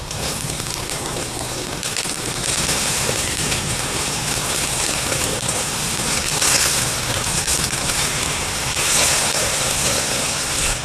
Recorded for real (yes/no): no